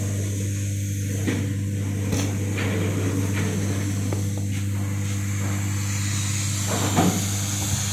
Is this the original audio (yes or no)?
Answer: yes